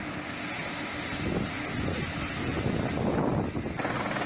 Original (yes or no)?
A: yes